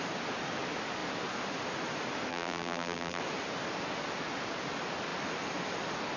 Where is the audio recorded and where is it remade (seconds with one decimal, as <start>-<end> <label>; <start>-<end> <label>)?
0.0-2.3 recorded; 2.3-3.2 remade; 3.2-6.2 recorded

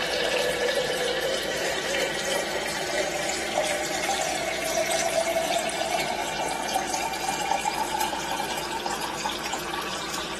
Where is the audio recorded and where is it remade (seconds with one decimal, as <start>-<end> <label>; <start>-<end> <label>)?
0.0-6.2 remade; 6.2-10.4 recorded

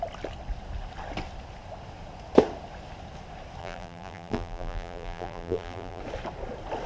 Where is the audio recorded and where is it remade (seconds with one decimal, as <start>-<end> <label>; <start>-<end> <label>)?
0.0-3.6 recorded; 3.6-6.0 remade; 6.0-6.9 recorded